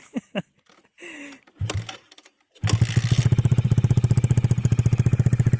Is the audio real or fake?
real